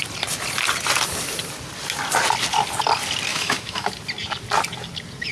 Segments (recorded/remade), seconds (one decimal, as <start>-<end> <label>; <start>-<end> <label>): 0.0-3.3 recorded; 3.3-3.9 remade; 3.9-5.3 recorded